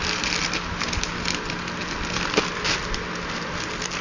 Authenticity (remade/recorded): recorded